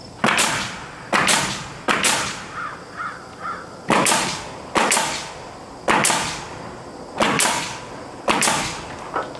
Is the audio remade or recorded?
recorded